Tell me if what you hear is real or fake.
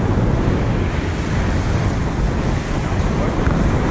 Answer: real